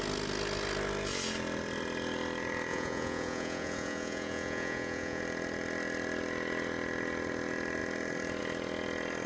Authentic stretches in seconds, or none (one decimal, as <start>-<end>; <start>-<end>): 0.0-2.7; 5.2-9.3